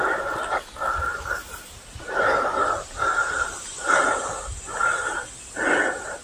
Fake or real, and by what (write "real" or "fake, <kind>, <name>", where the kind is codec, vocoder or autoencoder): real